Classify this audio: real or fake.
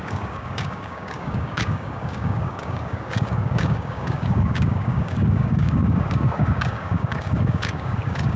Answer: fake